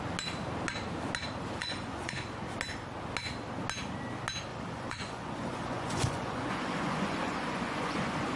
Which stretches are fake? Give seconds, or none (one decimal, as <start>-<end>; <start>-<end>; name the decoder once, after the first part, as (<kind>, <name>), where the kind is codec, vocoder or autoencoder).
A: 1.6-2.1 (vocoder, Vocos); 4.5-8.4